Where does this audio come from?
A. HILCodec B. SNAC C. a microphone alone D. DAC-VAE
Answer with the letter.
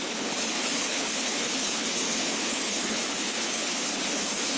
A